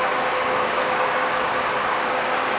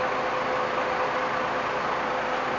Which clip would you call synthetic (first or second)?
first